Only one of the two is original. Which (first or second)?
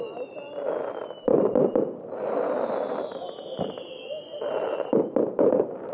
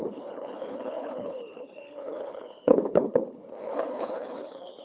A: first